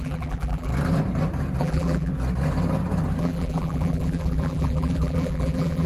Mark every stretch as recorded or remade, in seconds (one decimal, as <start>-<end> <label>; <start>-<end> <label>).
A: 0.0-0.7 remade; 0.7-1.6 recorded; 1.6-2.1 remade; 2.1-3.2 recorded; 3.2-5.9 remade